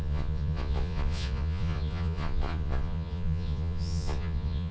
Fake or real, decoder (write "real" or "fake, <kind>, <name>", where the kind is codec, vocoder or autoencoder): fake, vocoder, Vocos